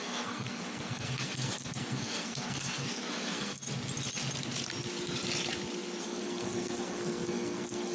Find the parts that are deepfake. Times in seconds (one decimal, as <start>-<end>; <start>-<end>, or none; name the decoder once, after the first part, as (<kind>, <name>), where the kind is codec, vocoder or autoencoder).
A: 0.0-3.6 (codec, SNAC); 6.0-7.9